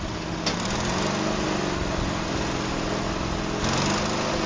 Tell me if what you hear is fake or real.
real